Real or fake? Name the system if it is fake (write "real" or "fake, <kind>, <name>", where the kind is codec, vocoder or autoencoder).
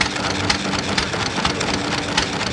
real